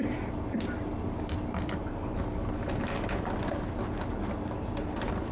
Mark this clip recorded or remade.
recorded